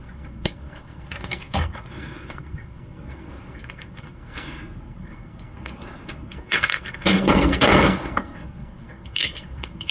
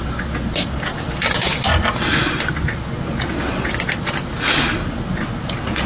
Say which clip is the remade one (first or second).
first